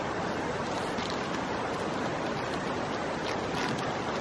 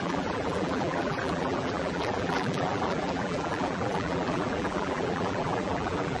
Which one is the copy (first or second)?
second